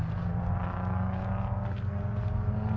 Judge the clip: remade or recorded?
recorded